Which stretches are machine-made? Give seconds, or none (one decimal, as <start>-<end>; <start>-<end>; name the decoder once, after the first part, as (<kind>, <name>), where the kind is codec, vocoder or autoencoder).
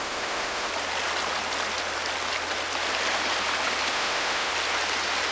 0.0-0.7 (autoencoder, DAC-VAE); 3.9-4.5